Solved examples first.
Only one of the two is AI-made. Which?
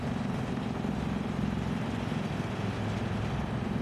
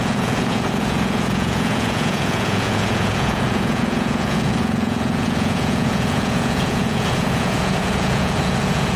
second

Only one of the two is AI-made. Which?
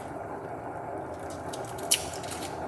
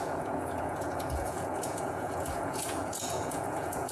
second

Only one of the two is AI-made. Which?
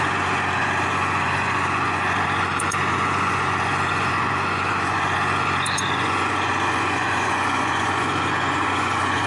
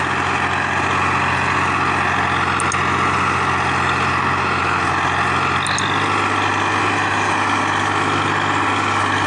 first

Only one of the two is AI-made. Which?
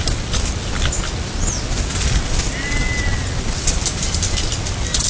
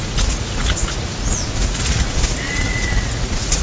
second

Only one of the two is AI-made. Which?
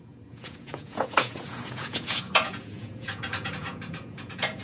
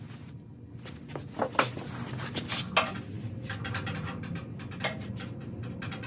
first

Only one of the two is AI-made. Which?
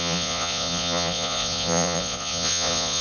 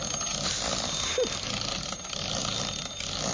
first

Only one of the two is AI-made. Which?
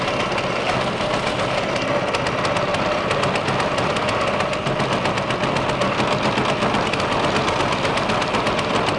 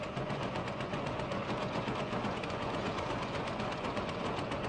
second